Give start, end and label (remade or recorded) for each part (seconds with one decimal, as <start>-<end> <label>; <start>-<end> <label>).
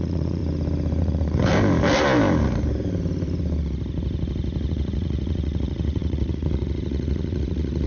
0.0-0.4 remade; 0.4-1.0 recorded; 1.0-1.5 remade; 1.5-4.7 recorded; 4.7-7.9 remade